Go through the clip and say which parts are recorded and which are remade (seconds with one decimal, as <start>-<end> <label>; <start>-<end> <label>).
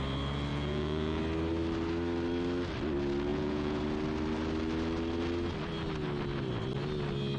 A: 0.0-0.5 recorded; 0.5-1.2 remade; 1.2-3.3 recorded; 3.3-3.8 remade; 3.8-7.4 recorded